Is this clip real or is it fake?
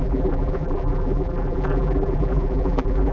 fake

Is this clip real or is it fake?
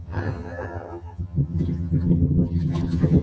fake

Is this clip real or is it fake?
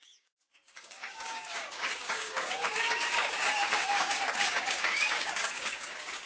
fake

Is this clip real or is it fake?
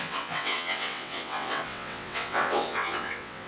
fake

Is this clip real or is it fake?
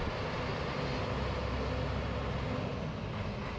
real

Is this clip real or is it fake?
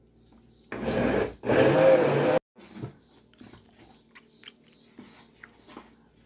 real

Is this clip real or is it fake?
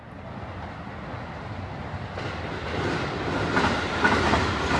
real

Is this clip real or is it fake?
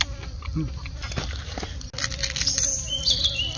real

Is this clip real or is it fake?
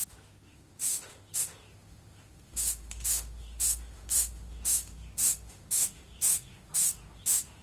fake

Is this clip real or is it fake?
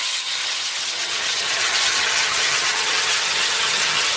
fake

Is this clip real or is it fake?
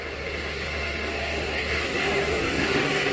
fake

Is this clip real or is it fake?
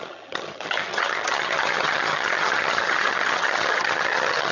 fake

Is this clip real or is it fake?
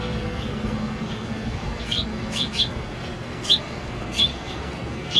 fake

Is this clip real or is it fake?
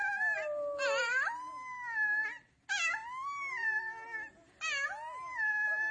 real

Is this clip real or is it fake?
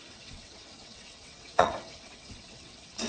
fake